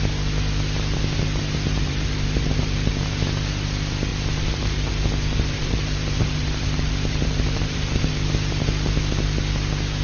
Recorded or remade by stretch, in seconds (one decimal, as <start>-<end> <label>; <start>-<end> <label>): 0.0-1.8 recorded; 1.8-2.9 remade; 2.9-4.1 recorded; 4.1-8.1 remade; 8.1-10.0 recorded